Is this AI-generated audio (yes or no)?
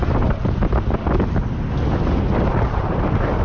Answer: no